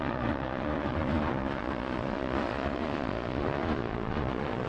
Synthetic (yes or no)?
yes